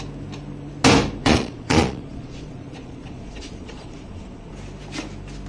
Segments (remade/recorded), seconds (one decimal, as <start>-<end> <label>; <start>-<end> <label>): 0.0-1.2 recorded; 1.2-4.5 remade; 4.5-5.5 recorded